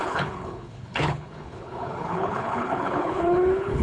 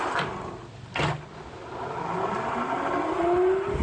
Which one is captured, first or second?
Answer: second